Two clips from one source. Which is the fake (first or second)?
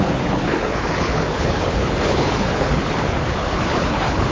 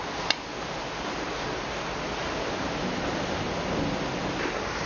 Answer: first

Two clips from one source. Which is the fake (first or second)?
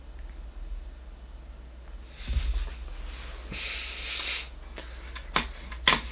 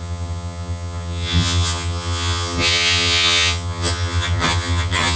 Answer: second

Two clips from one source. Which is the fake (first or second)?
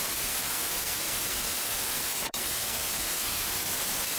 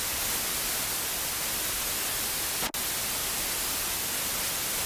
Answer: first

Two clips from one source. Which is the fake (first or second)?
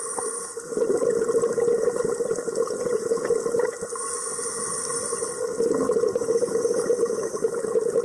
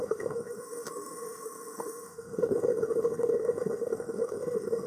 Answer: second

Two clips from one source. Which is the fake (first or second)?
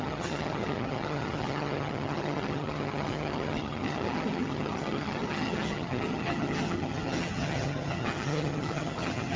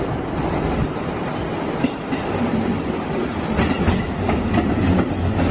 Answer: first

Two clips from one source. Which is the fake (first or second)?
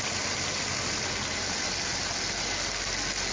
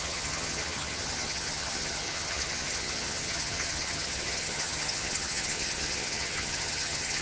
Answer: second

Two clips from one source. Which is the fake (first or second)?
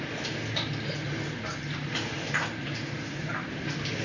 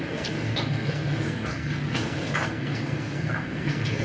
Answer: second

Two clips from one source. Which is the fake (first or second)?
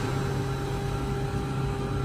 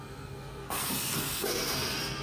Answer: second